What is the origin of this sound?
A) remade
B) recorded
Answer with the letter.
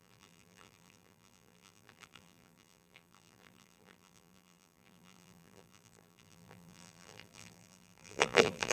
A